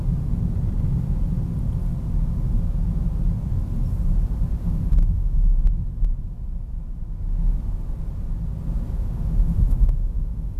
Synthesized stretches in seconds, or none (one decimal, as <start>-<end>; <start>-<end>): 4.6-5.6; 8.9-10.6